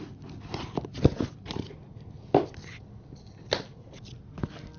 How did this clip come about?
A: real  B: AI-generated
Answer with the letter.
A